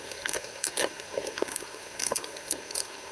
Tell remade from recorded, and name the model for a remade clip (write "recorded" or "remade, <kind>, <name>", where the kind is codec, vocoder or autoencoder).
remade, codec, SNAC